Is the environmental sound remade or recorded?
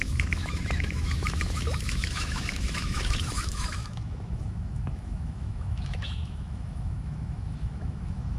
remade